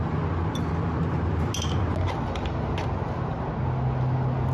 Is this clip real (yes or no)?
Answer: yes